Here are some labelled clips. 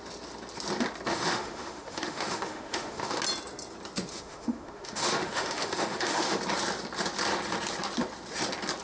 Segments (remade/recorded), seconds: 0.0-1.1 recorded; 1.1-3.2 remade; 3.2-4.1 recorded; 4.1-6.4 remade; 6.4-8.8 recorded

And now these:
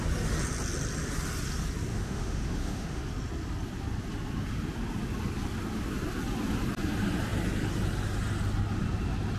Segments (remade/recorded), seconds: 0.0-1.9 recorded; 1.9-3.0 remade; 3.0-9.4 recorded

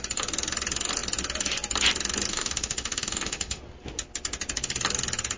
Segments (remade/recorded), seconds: 0.0-2.3 recorded; 2.3-3.6 remade; 3.6-5.4 recorded

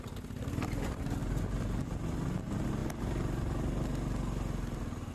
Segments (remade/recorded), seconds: 0.0-5.1 recorded